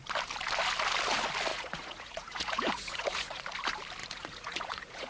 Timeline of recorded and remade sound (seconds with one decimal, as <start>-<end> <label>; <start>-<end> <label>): 0.0-1.5 recorded; 1.5-3.4 remade; 3.4-4.0 recorded; 4.0-5.1 remade